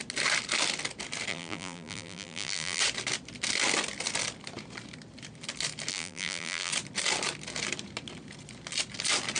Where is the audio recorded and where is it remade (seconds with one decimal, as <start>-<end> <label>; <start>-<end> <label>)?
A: 0.0-1.3 recorded; 1.3-2.8 remade; 2.8-5.9 recorded; 5.9-6.7 remade; 6.7-9.4 recorded